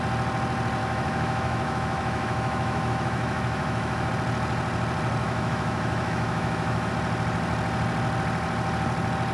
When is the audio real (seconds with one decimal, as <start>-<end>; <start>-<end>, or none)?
0.0-0.8; 4.1-5.2; 6.9-9.3